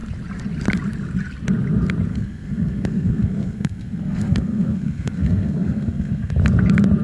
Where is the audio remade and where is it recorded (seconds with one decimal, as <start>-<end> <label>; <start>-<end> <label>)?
0.0-2.1 recorded; 2.1-6.3 remade; 6.3-7.0 recorded